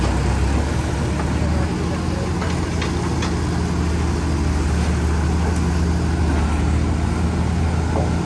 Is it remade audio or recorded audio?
recorded